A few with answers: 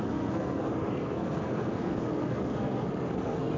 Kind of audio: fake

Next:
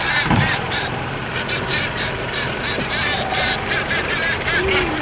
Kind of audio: fake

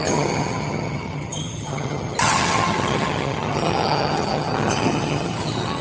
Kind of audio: fake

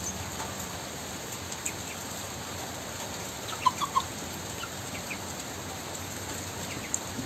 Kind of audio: real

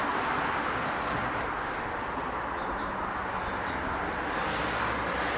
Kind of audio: real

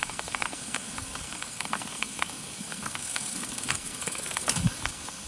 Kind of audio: fake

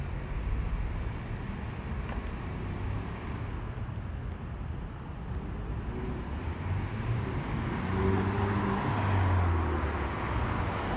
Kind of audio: real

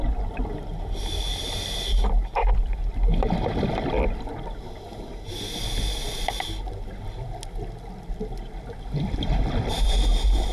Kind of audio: real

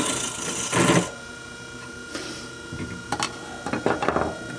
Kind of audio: real